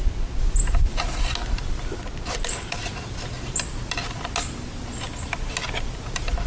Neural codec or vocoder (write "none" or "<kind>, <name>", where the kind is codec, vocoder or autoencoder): none